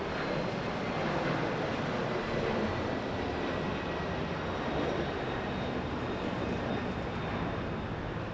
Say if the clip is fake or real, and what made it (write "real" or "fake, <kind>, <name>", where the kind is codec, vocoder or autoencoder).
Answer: real